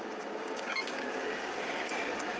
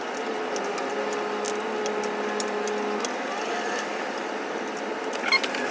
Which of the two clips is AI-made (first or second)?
first